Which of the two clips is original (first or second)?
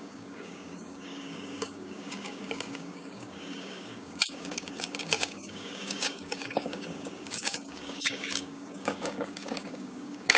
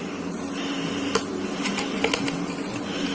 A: second